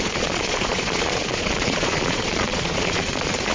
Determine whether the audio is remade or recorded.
remade